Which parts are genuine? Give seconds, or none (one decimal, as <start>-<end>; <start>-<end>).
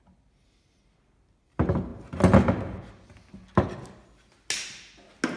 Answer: 0.0-5.4